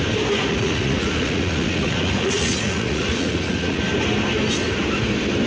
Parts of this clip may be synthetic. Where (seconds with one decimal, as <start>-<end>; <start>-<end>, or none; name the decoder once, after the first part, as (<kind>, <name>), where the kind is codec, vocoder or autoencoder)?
0.5-3.8 (vocoder, Vocos)